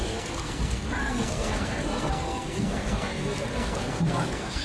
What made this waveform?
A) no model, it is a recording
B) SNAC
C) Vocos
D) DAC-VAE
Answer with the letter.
B